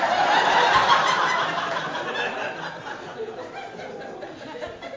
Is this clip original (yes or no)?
yes